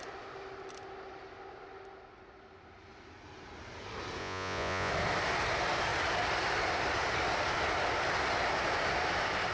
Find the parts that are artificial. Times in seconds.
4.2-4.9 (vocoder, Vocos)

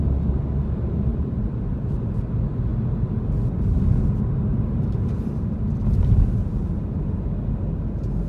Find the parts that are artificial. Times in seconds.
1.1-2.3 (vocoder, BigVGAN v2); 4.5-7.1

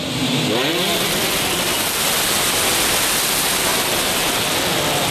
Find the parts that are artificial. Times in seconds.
0.7-2.0 (vocoder, BigVGAN v2); 3.7-5.1